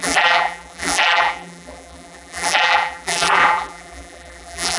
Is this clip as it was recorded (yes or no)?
no